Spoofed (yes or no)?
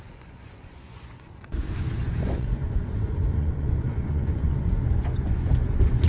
yes